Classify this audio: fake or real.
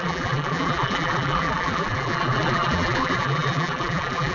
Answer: fake